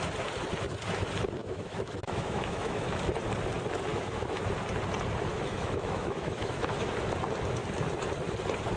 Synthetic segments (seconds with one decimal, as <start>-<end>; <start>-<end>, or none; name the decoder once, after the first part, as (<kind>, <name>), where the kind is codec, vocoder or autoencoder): 1.4-3.0 (autoencoder, DAC-VAE); 3.9-4.4; 5.3-6.9